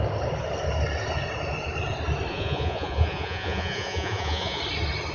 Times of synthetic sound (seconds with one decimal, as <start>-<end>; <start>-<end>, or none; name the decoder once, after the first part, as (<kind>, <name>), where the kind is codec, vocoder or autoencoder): 2.3-4.6 (vocoder, Vocos)